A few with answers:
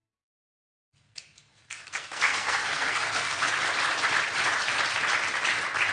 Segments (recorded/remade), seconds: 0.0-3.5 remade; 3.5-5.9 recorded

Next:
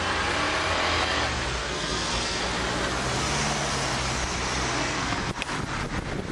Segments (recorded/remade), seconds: 0.0-1.6 recorded; 1.6-2.4 remade; 2.4-4.8 recorded; 4.8-5.3 remade; 5.3-6.3 recorded

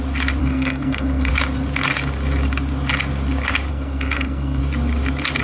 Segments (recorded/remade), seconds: 0.0-0.4 recorded; 0.4-1.3 remade; 1.3-3.7 recorded; 3.7-4.6 remade; 4.6-5.4 recorded

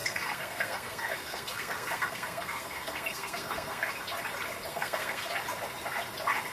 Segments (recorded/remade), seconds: 0.0-3.9 remade; 3.9-4.7 recorded; 4.7-5.3 remade; 5.3-6.5 recorded

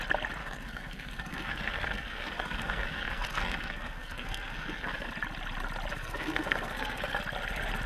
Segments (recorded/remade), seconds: 0.0-0.4 recorded; 0.4-5.1 remade; 5.1-5.9 recorded; 5.9-7.2 remade; 7.2-7.9 recorded

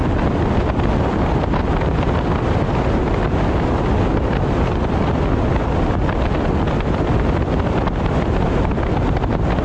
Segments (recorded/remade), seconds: 0.0-9.6 recorded

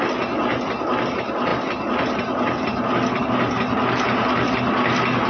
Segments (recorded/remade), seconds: 0.0-5.3 recorded